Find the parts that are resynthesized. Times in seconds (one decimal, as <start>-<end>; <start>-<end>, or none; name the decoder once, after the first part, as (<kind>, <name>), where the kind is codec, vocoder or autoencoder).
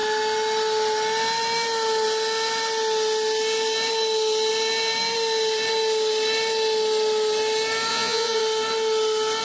7.9-8.4 (vocoder, Vocos)